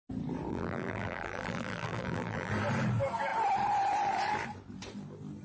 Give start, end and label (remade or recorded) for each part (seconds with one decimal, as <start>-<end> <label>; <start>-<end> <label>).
0.0-0.5 recorded; 0.5-2.5 remade; 2.5-5.4 recorded